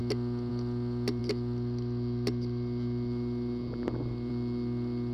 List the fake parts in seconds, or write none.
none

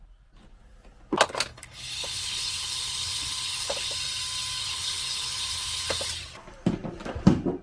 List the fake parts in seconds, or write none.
1.5-3.9 (codec, HILCodec); 4.6-6.1

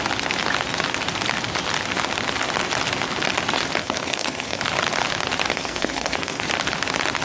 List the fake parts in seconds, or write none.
3.8-4.6 (codec, SNAC); 5.5-6.4

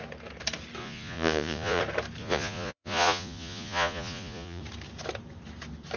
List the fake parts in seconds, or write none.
0.8-1.8 (vocoder, Vocos); 2.2-4.6